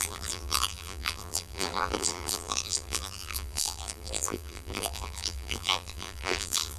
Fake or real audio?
fake